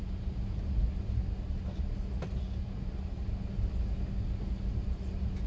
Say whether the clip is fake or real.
real